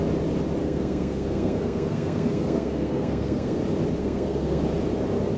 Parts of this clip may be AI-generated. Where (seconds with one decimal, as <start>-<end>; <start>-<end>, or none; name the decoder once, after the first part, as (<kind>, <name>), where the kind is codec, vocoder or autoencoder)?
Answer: 0.6-3.6 (codec, SNAC); 4.0-4.6